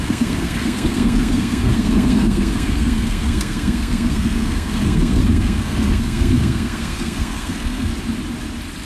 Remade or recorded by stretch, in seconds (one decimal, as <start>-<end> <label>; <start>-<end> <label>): 0.0-7.9 remade; 7.9-8.9 recorded